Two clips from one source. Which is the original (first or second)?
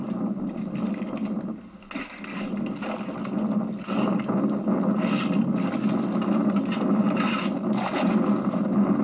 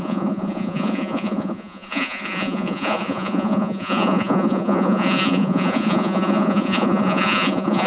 first